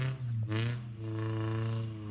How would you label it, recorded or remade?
recorded